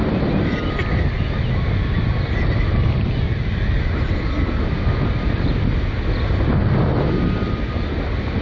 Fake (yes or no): no